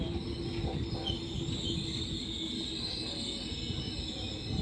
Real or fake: real